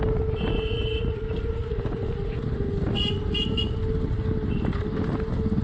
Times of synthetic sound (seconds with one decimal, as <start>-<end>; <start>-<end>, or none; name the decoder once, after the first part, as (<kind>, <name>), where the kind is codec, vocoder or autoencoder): none